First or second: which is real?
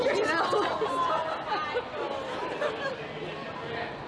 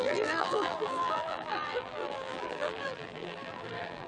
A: first